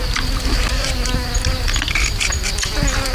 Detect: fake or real real